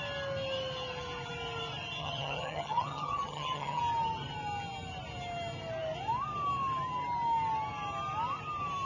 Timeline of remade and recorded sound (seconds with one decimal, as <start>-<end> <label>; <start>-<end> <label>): 0.0-2.0 recorded; 2.0-3.8 remade; 3.8-8.8 recorded